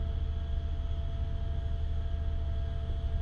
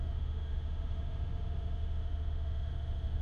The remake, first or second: second